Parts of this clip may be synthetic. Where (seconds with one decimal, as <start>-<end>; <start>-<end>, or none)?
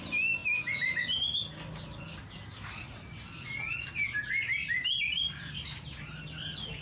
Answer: none